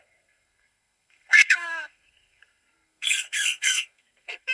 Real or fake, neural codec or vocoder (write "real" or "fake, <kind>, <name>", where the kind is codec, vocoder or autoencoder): fake, codec, SNAC